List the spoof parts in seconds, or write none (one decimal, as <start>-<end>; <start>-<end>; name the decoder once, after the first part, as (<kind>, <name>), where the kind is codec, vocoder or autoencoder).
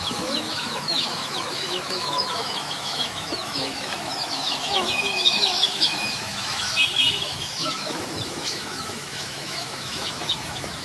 0.0-10.8 (autoencoder, DAC-VAE)